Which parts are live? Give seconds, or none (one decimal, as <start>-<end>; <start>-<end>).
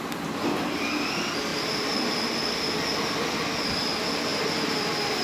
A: 0.0-1.5; 2.4-5.2